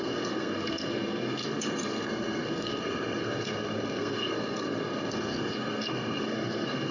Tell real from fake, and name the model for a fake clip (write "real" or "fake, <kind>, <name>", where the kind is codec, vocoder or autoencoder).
fake, codec, SNAC